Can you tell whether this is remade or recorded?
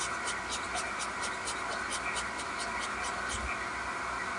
recorded